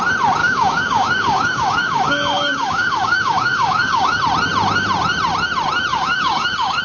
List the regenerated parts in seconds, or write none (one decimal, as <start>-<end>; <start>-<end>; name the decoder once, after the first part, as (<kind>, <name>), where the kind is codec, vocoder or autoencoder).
0.4-4.2 (codec, DAC); 5.9-6.8